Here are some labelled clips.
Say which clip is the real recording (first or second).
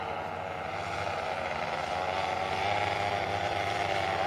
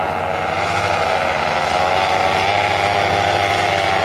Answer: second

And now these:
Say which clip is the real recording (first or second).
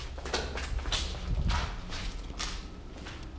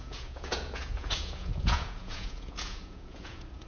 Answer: first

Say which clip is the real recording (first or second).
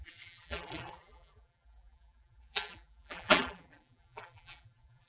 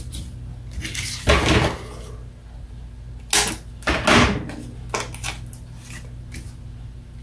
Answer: second